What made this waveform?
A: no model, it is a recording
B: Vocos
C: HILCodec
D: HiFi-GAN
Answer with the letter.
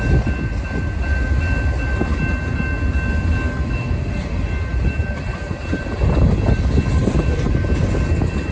A